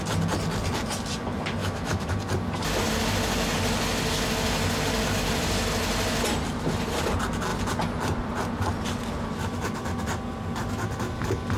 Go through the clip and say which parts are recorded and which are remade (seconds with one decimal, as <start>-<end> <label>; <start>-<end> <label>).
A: 0.0-1.6 recorded; 1.6-2.1 remade; 2.1-11.6 recorded